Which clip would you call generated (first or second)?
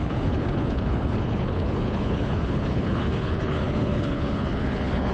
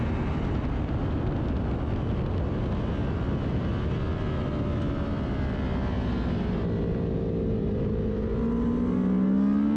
first